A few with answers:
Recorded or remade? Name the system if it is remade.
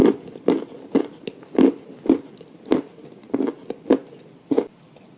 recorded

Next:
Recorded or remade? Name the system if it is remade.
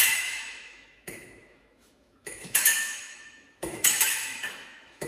remade, autoencoder, DAC-VAE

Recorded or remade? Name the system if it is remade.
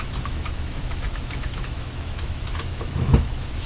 remade, autoencoder, DAC-VAE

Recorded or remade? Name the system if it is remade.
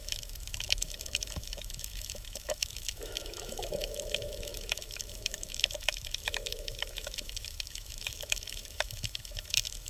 remade, autoencoder, DAC-VAE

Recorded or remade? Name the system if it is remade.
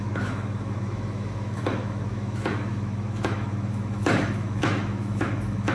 remade, autoencoder, DAC-VAE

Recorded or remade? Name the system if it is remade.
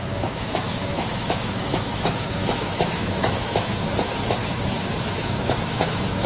remade, autoencoder, DAC-VAE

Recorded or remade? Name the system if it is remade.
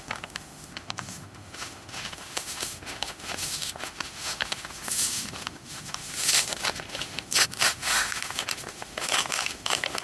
remade, autoencoder, DAC-VAE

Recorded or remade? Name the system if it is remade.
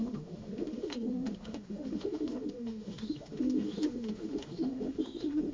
remade, autoencoder, DAC-VAE